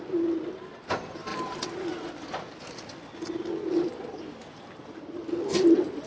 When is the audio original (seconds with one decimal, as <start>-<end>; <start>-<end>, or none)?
0.0-1.3; 5.0-5.5